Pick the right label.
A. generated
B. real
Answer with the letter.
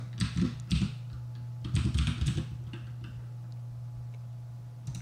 B